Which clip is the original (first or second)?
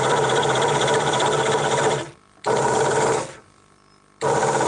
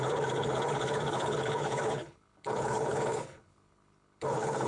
first